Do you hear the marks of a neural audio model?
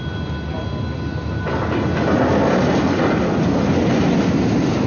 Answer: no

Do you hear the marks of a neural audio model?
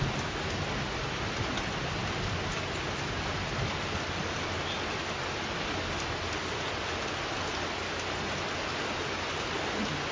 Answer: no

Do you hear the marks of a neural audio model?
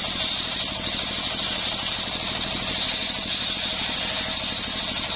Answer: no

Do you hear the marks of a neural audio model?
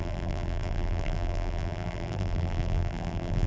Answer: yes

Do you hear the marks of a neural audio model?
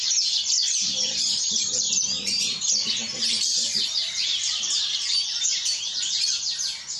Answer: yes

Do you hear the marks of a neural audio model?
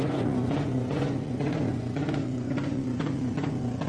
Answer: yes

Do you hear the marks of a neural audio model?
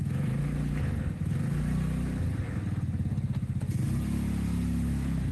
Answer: no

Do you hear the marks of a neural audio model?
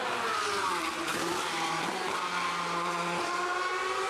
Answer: no